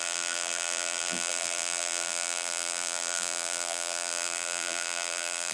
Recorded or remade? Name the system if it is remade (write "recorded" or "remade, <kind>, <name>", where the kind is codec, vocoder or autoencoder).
remade, vocoder, BigVGAN v2